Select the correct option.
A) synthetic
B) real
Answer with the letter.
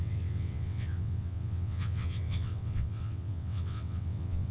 A